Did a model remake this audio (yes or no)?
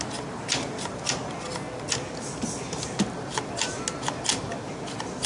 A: no